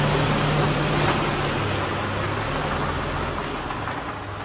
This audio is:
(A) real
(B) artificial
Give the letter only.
A